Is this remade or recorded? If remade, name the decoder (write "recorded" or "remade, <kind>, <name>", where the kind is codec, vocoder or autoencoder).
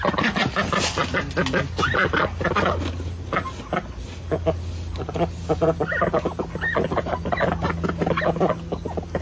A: recorded